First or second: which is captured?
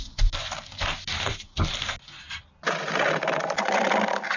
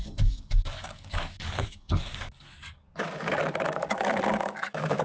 first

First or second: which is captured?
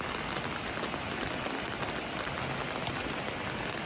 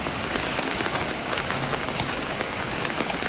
first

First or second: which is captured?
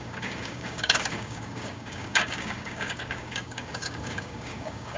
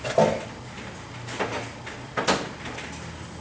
second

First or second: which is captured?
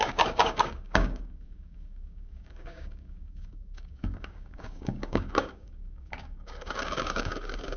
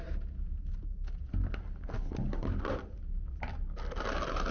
second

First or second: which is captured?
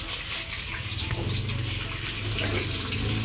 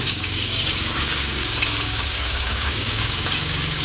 first